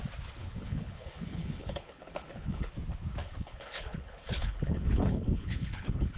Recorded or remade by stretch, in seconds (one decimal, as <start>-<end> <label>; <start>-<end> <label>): 0.0-0.4 recorded; 0.4-2.7 remade; 2.7-3.2 recorded; 3.2-6.2 remade